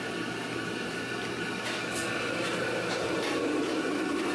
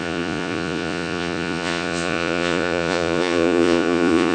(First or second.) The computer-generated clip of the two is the second